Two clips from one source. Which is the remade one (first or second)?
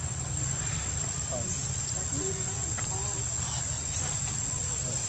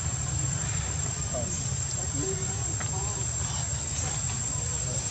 second